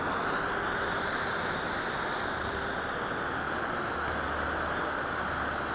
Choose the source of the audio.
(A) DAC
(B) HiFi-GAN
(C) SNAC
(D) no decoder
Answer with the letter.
D